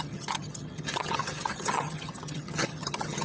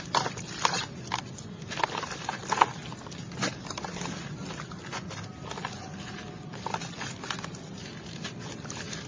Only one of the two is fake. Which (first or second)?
first